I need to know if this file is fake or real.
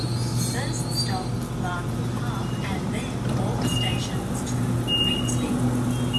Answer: real